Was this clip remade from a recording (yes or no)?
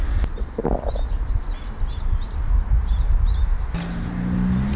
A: no